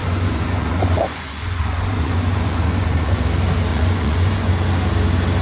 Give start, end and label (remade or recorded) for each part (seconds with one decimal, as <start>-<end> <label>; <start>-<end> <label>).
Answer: 0.0-3.2 remade; 3.2-3.7 recorded; 3.7-4.5 remade; 4.5-5.4 recorded